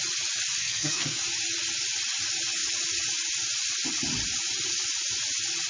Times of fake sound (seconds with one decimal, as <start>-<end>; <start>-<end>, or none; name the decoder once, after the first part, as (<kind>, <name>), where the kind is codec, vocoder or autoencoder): 0.6-1.2 (codec, SNAC)